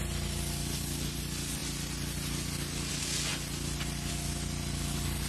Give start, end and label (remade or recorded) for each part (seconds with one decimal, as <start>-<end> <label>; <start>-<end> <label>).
0.0-5.3 recorded